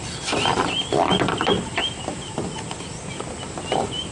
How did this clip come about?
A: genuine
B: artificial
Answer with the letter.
A